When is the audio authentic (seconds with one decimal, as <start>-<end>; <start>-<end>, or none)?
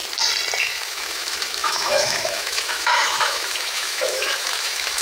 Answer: 0.0-0.6